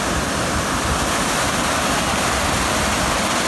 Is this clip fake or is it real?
real